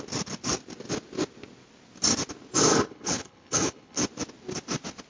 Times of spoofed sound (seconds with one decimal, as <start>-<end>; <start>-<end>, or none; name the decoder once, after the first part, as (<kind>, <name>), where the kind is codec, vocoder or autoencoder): 2.7-4.0 (codec, HILCodec)